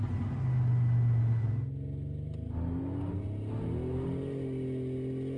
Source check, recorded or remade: recorded